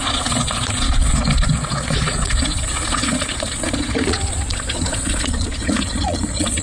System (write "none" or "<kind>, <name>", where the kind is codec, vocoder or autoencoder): vocoder, Vocos